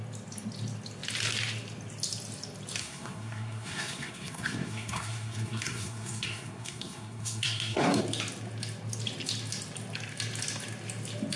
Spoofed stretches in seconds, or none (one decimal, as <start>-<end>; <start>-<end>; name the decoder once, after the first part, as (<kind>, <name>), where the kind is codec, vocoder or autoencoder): 2.8-8.0 (codec, SNAC)